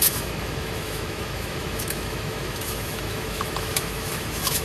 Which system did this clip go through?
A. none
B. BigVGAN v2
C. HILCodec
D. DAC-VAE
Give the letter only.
D